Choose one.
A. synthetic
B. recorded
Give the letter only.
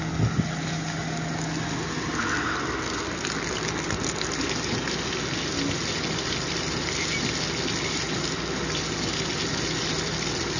B